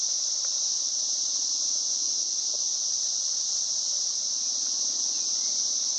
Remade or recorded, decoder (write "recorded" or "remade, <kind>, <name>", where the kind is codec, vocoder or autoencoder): recorded